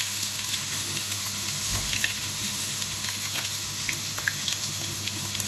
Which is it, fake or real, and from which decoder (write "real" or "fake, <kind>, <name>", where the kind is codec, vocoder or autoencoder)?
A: fake, autoencoder, DAC-VAE